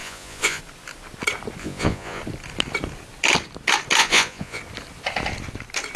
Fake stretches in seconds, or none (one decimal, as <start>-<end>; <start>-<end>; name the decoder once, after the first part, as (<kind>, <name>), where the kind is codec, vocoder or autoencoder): 0.0-0.6 (vocoder, Vocos); 1.6-2.2; 4.0-4.6